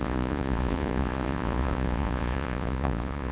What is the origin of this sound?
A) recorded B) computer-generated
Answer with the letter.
B